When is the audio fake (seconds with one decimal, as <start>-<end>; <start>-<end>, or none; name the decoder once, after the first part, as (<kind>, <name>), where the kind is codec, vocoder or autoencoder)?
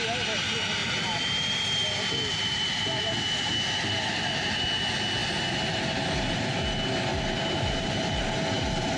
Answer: 0.8-3.5 (vocoder, BigVGAN v2); 7.1-8.1